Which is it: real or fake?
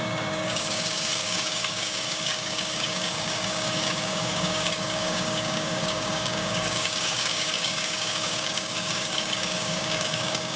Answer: fake